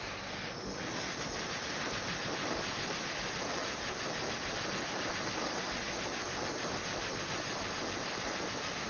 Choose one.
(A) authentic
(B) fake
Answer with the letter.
A